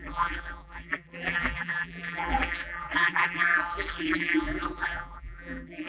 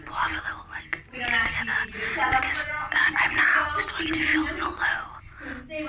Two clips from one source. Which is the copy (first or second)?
first